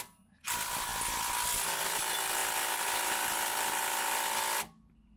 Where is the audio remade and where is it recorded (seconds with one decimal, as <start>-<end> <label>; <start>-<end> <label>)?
0.0-5.2 recorded